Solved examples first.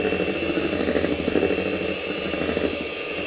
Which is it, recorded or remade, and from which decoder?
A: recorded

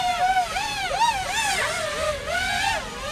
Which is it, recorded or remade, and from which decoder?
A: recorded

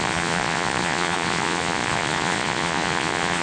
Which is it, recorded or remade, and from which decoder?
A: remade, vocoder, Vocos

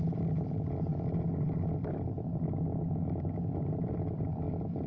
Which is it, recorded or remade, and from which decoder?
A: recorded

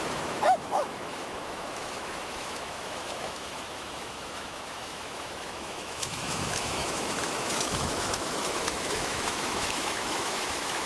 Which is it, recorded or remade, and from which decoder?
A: remade, autoencoder, DAC-VAE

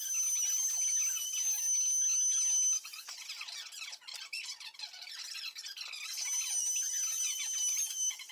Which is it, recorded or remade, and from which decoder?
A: recorded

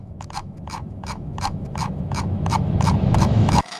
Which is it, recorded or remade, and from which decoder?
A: remade, autoencoder, DAC-VAE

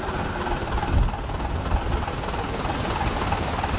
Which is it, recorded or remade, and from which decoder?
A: recorded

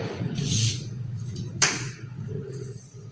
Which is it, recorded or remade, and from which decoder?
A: remade, vocoder, Vocos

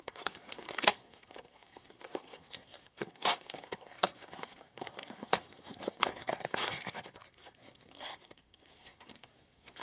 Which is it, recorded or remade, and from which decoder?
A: remade, codec, SNAC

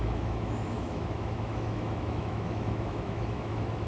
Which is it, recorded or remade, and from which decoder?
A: remade, autoencoder, DAC-VAE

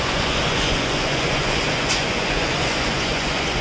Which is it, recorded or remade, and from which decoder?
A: remade, vocoder, Vocos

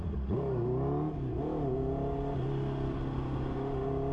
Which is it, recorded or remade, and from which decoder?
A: recorded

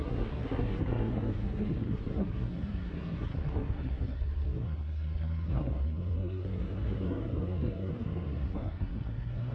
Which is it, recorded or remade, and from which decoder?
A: remade, codec, SNAC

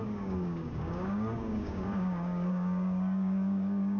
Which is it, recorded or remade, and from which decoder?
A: remade, codec, DAC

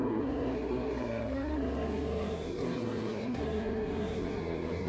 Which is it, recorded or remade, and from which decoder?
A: remade, codec, SNAC